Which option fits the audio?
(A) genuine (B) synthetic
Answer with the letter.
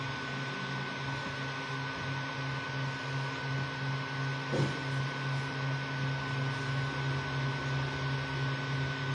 A